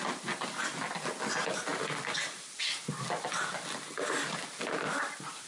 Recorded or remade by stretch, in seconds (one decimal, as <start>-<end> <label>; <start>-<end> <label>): 0.0-5.5 recorded